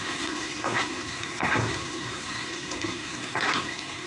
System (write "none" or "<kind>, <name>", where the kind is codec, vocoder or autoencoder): codec, SNAC